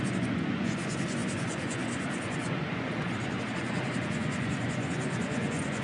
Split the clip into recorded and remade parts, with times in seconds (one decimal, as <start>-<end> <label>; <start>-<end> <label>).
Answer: 0.0-5.8 remade